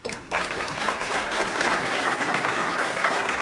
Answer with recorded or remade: remade